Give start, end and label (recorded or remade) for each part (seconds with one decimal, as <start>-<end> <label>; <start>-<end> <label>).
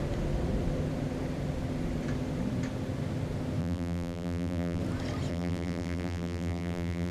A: 0.0-3.6 recorded; 3.6-4.8 remade; 4.8-5.3 recorded; 5.3-7.1 remade